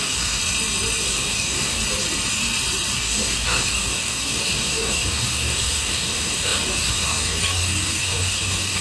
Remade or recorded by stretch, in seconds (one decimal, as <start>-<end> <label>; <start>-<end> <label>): 0.0-0.4 remade; 0.4-1.0 recorded; 1.0-1.8 remade; 1.8-2.9 recorded; 2.9-8.8 remade